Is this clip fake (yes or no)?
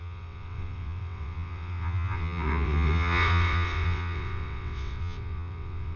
yes